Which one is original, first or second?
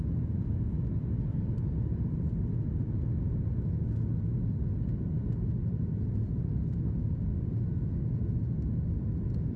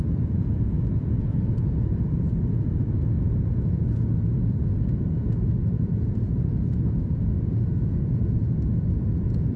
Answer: first